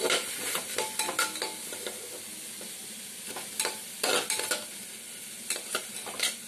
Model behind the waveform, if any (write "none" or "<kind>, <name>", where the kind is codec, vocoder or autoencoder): none